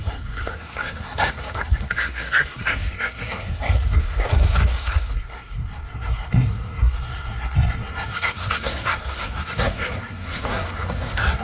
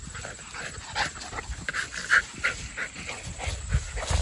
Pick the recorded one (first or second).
second